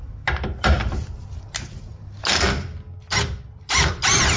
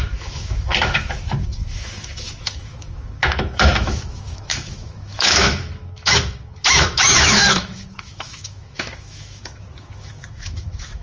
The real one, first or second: first